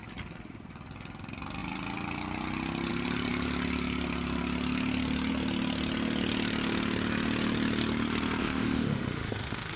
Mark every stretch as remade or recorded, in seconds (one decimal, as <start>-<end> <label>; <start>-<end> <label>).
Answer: 0.0-8.4 recorded; 8.4-9.8 remade